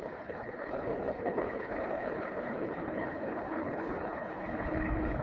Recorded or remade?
remade